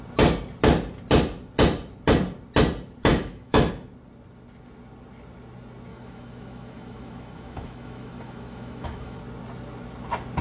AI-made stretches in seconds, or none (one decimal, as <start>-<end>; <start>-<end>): 3.1-3.7; 5.9-9.2